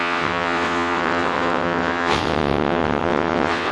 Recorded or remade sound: remade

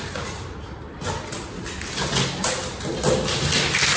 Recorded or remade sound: recorded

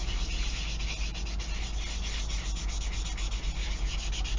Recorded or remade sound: recorded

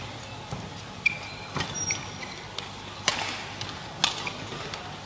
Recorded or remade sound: recorded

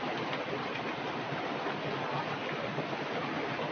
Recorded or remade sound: recorded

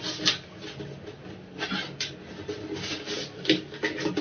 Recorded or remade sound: recorded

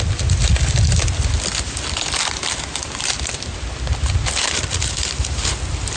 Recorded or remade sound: recorded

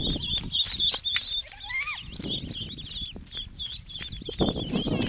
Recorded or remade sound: recorded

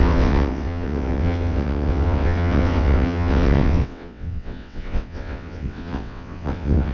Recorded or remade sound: remade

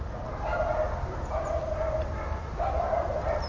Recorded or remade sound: recorded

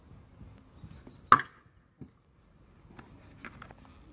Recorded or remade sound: recorded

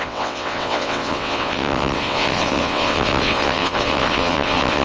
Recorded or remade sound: remade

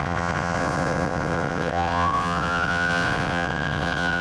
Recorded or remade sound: remade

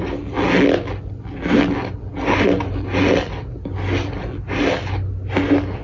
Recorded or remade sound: recorded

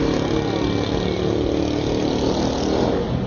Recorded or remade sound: recorded